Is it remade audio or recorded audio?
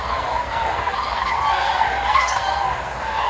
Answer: remade